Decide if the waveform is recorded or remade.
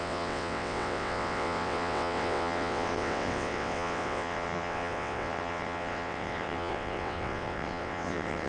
remade